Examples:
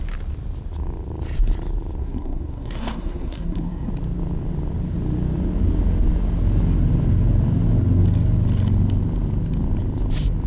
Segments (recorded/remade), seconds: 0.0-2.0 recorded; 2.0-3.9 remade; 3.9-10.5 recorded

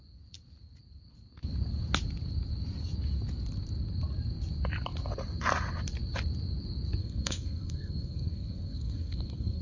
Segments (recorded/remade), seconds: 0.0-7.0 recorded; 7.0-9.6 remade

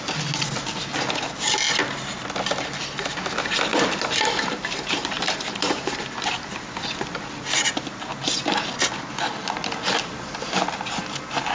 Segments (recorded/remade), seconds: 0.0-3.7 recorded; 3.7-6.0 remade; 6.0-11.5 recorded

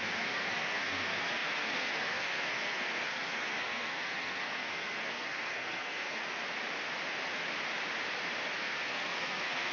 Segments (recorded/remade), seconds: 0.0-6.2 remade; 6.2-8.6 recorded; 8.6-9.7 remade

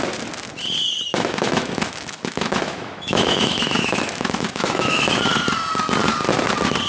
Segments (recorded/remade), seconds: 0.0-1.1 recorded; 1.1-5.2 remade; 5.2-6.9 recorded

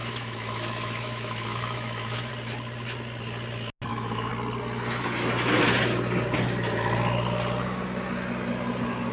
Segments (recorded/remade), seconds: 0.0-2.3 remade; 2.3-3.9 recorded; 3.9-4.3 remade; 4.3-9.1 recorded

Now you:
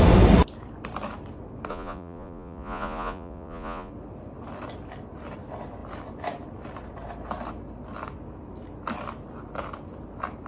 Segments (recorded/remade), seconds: 0.0-1.7 recorded; 1.7-3.9 remade; 3.9-10.5 recorded